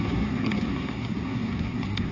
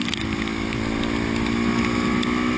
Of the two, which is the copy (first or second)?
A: first